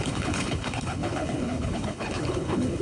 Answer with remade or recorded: remade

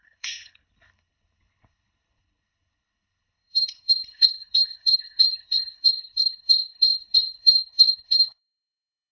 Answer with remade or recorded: remade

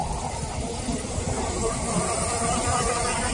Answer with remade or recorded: recorded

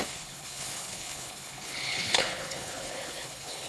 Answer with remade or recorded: remade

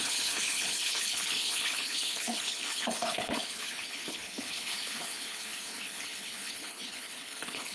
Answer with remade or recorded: remade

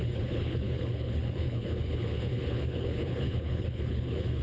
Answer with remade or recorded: remade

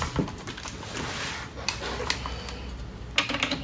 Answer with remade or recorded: recorded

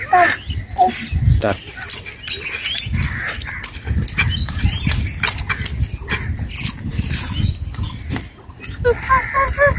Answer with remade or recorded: recorded